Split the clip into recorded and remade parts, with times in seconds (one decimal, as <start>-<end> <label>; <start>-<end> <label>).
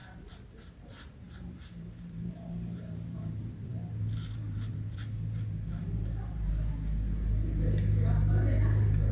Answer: 0.0-5.0 remade; 5.0-5.8 recorded; 5.8-6.5 remade; 6.5-9.1 recorded